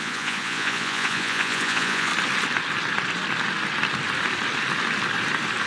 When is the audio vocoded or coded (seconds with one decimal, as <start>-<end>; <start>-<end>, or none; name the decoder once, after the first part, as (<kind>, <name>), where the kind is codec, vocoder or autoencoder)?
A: 0.0-2.1 (vocoder, Vocos)

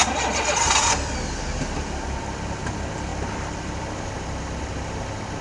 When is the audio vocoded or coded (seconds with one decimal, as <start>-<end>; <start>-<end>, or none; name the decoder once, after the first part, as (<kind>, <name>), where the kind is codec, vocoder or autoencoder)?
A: none